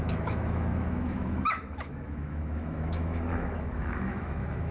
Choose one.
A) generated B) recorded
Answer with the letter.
A